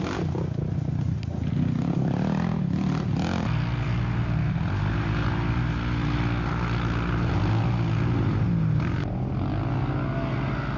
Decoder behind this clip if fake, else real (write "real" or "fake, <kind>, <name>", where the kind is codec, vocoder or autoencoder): real